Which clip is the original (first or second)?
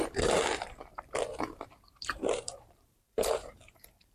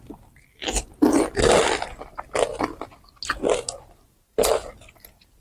second